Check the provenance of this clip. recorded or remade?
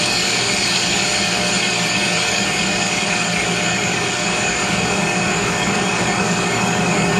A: remade